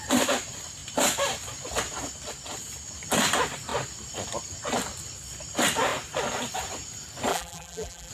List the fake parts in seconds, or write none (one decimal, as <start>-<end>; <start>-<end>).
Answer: 7.3-8.1